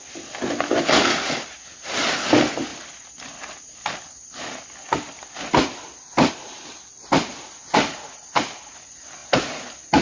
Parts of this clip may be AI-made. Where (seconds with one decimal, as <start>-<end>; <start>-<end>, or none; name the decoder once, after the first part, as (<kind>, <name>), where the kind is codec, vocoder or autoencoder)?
none